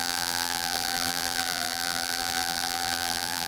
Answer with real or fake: fake